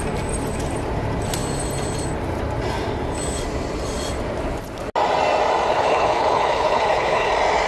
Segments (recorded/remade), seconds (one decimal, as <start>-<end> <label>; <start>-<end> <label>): 0.0-5.7 recorded; 5.7-7.3 remade; 7.3-7.7 recorded